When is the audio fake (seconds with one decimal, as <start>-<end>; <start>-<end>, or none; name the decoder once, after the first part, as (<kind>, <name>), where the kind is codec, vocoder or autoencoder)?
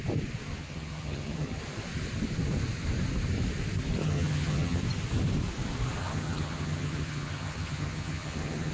0.6-1.6 (vocoder, HiFi-GAN); 4.0-4.8; 6.0-8.7